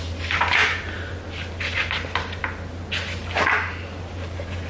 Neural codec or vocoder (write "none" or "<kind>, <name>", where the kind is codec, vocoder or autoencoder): none